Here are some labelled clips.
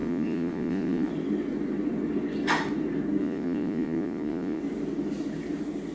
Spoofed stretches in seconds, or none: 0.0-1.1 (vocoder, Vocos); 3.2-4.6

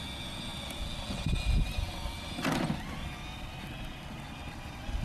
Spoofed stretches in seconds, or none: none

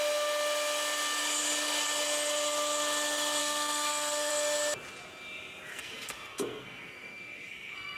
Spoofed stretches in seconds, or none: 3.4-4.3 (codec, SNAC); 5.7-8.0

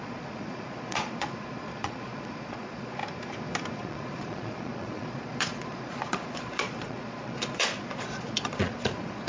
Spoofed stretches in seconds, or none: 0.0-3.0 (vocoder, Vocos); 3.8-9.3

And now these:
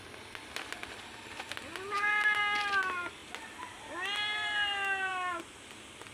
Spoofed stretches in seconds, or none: none

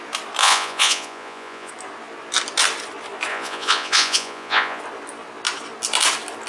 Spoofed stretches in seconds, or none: 0.4-1.7 (vocoder, Vocos); 3.3-4.8